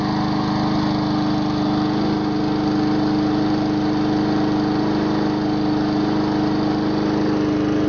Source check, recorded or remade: recorded